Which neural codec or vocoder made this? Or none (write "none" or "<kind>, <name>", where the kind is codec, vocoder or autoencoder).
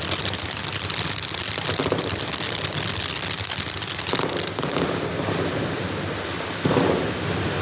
none